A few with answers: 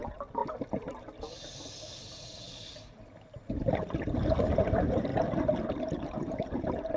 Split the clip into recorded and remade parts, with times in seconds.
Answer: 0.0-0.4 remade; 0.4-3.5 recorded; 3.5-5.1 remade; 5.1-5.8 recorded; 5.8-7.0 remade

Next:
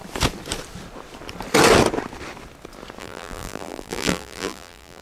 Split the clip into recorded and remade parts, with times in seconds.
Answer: 0.0-3.0 recorded; 3.0-5.0 remade